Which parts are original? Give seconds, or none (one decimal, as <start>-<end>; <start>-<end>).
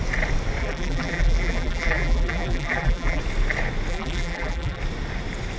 0.0-0.6; 3.2-3.9; 4.8-5.6